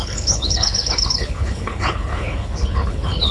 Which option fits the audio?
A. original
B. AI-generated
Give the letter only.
B